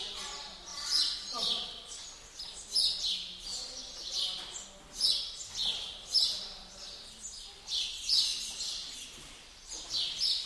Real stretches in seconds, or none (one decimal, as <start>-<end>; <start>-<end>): 0.0-0.7; 1.3-5.6; 6.7-8.3